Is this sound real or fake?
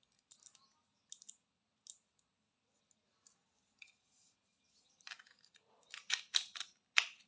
real